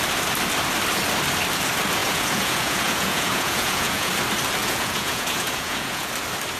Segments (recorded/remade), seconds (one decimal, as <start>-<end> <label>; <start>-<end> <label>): 0.0-2.0 recorded; 2.0-4.1 remade; 4.1-4.6 recorded; 4.6-6.1 remade; 6.1-6.6 recorded